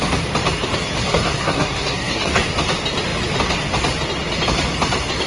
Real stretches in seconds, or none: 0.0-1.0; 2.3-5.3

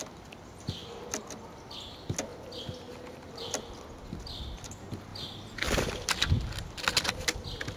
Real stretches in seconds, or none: 0.0-7.8

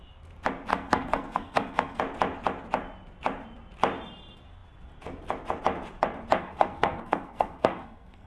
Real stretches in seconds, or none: 0.0-0.7; 2.0-6.4